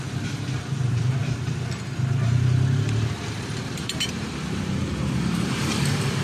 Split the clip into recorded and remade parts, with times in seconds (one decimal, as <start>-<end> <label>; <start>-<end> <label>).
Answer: 0.0-1.2 remade; 1.2-3.7 recorded; 3.7-4.8 remade; 4.8-5.3 recorded; 5.3-6.2 remade

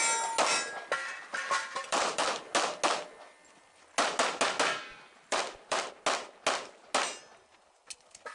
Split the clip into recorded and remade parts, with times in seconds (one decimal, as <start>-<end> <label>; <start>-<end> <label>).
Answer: 0.0-1.3 recorded; 1.3-2.4 remade; 2.4-4.9 recorded; 4.9-5.9 remade; 5.9-8.3 recorded

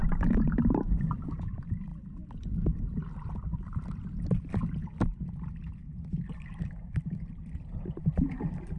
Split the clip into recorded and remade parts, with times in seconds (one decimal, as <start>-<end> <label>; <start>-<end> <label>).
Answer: 0.0-1.9 remade; 1.9-3.1 recorded; 3.1-8.8 remade

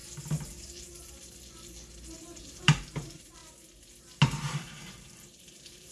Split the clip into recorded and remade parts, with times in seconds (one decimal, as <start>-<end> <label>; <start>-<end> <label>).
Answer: 0.0-2.4 recorded; 2.4-3.4 remade; 3.4-4.4 recorded; 4.4-5.9 remade

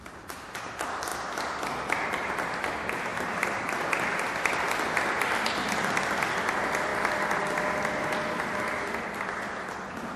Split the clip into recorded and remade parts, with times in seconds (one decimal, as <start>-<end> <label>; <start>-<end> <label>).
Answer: 0.0-3.1 recorded; 3.1-3.7 remade; 3.7-10.2 recorded

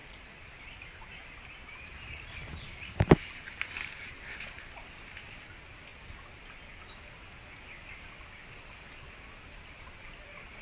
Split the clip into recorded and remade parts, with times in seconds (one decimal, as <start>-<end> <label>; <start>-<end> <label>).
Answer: 0.0-4.9 remade; 4.9-10.6 recorded

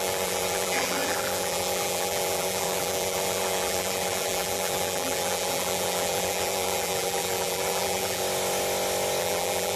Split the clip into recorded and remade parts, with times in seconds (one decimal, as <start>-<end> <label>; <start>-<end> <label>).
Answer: 0.0-8.2 remade; 8.2-9.2 recorded; 9.2-9.8 remade